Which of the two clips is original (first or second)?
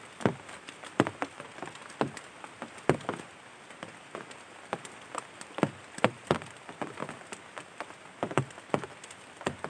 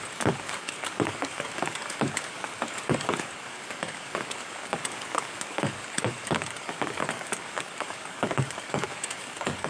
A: first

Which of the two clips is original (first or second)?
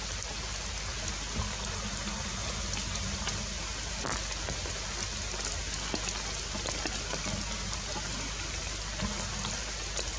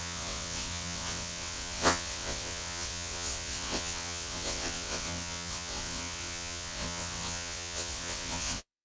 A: first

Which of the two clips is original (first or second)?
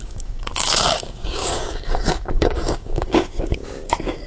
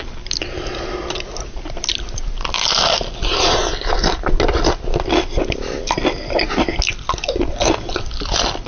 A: second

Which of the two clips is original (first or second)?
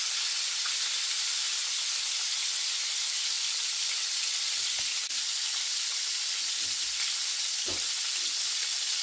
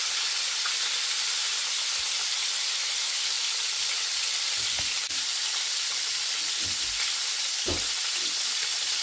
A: first